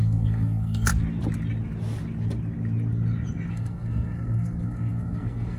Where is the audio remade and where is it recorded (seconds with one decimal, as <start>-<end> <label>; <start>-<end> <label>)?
0.0-0.9 remade; 0.9-3.5 recorded; 3.5-5.6 remade